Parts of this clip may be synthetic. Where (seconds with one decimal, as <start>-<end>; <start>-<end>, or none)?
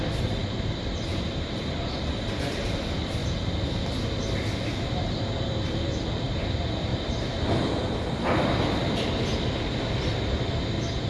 0.0-3.2; 5.5-6.9; 9.9-11.1